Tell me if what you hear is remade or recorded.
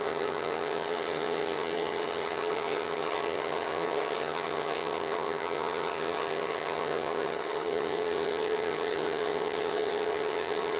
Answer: remade